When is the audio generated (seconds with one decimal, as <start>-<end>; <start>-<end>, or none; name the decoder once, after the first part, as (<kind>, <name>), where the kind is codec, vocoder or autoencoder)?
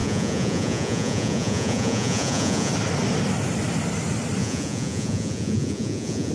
0.0-2.7 (vocoder, Vocos); 4.4-6.3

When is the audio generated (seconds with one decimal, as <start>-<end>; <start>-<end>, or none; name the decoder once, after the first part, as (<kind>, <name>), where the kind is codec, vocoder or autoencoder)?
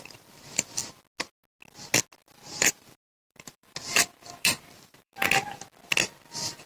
2.2-5.1 (vocoder, BigVGAN v2)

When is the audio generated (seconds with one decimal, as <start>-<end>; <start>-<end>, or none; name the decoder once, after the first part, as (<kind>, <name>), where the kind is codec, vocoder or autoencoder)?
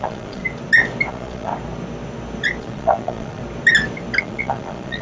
0.0-0.4 (vocoder, Vocos); 1.1-1.5; 2.6-3.4; 4.2-5.0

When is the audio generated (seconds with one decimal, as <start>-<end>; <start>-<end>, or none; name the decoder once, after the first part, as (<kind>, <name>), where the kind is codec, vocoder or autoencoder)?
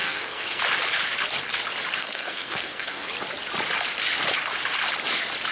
0.0-0.6 (codec, SNAC); 2.0-3.1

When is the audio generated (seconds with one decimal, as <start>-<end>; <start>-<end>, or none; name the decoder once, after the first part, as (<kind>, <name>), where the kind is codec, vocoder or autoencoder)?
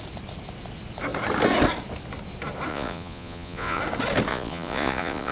2.7-3.8 (vocoder, Vocos); 4.3-5.3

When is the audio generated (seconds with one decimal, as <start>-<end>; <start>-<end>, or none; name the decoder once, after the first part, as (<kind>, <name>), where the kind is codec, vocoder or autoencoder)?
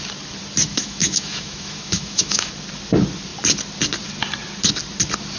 0.7-2.5 (autoencoder, DAC-VAE)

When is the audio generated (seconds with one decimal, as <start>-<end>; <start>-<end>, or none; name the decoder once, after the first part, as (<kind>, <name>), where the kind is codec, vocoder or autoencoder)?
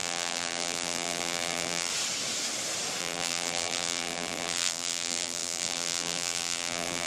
0.0-1.9 (vocoder, BigVGAN v2); 3.0-7.1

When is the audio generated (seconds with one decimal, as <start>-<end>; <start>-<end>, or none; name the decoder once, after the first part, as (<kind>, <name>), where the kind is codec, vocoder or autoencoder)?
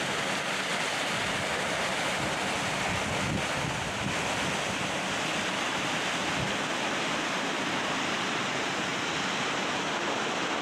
6.2-8.4 (vocoder, BigVGAN v2); 8.9-10.6